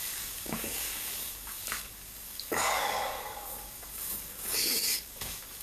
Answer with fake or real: fake